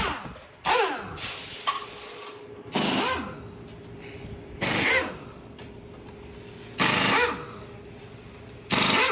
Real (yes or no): yes